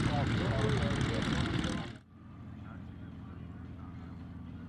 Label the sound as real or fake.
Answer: real